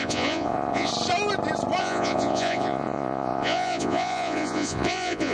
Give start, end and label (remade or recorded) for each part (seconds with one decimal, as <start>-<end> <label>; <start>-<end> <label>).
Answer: 0.0-0.9 remade; 0.9-1.8 recorded; 1.8-5.3 remade